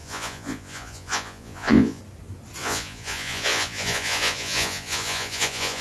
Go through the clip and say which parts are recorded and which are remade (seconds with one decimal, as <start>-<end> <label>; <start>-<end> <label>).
0.0-2.0 remade; 2.0-2.6 recorded; 2.6-5.8 remade